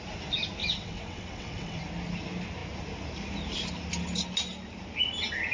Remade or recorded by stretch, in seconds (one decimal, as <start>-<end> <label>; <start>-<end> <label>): 0.0-0.6 recorded; 0.6-1.8 remade; 1.8-5.5 recorded